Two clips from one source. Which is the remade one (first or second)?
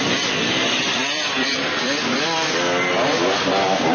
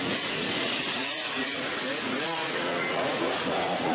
second